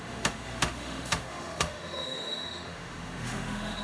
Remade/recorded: remade